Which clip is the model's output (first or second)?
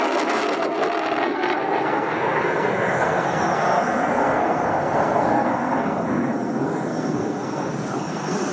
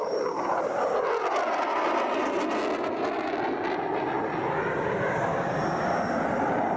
first